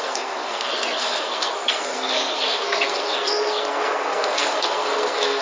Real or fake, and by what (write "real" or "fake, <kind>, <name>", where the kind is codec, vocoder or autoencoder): fake, codec, SNAC